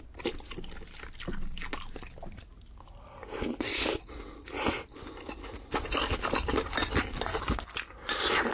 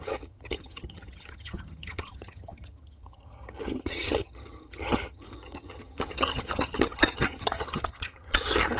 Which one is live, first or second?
first